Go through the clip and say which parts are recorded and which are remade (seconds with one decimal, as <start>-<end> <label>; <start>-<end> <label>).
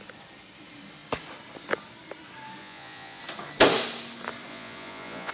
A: 0.0-2.6 recorded; 2.6-3.2 remade; 3.2-4.5 recorded; 4.5-5.3 remade